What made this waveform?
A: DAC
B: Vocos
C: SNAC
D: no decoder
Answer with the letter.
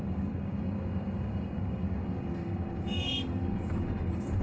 A